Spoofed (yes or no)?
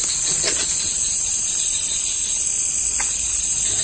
no